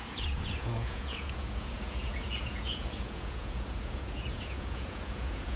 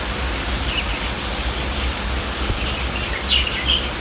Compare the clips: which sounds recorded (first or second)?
second